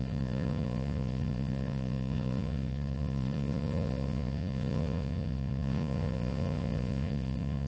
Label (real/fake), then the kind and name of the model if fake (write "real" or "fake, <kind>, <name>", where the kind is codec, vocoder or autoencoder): fake, vocoder, Vocos